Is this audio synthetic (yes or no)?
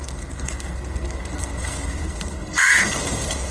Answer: yes